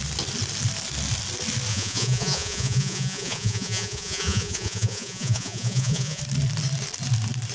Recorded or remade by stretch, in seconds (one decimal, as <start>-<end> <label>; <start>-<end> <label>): 0.0-1.7 recorded; 1.7-6.2 remade; 6.2-7.5 recorded

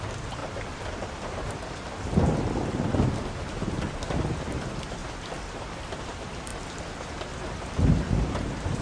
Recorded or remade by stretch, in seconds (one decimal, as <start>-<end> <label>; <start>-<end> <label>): 0.0-0.4 recorded; 0.4-1.6 remade; 1.6-5.0 recorded; 5.0-5.5 remade; 5.5-8.8 recorded

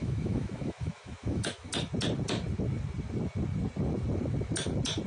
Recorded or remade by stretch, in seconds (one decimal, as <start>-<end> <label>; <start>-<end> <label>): 0.0-1.7 remade; 1.7-5.1 recorded

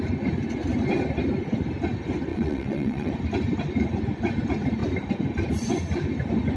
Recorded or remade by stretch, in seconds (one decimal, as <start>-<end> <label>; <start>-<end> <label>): 0.0-2.3 recorded; 2.3-3.1 remade; 3.1-6.6 recorded

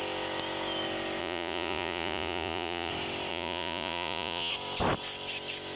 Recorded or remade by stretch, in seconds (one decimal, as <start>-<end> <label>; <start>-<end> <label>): 0.0-1.2 recorded; 1.2-2.9 remade; 2.9-3.3 recorded; 3.3-4.5 remade; 4.5-5.8 recorded

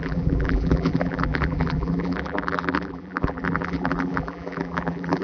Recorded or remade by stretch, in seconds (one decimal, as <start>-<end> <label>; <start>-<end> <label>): 0.0-5.2 remade